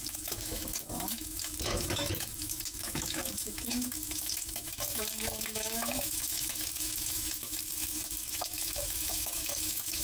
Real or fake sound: fake